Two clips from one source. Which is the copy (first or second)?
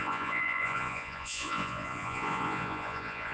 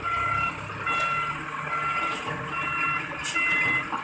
first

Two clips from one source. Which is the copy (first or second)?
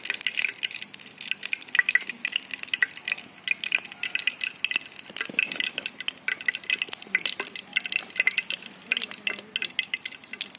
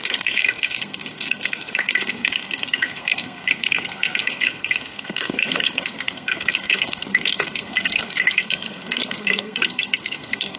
second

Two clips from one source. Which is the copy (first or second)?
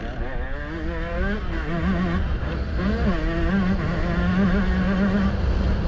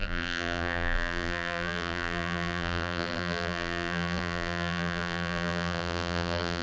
second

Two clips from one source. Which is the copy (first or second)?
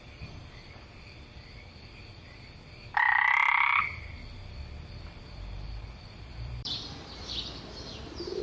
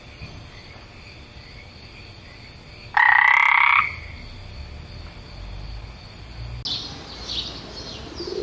first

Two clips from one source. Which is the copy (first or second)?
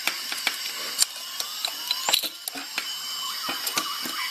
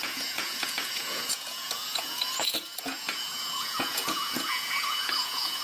second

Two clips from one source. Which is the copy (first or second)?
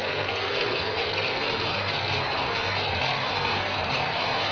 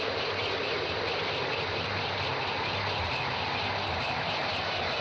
first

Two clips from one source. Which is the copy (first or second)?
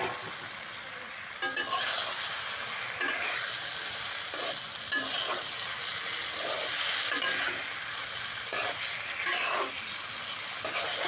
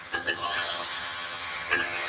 second